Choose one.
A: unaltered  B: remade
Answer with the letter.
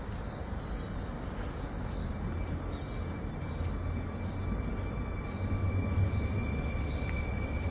A